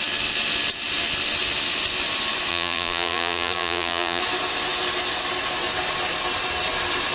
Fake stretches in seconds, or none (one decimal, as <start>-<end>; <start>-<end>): 2.5-4.2